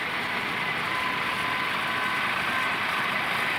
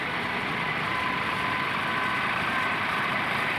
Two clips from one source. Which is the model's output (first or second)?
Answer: second